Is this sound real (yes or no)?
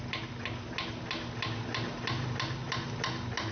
yes